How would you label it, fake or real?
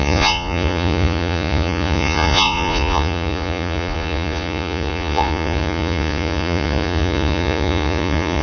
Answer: fake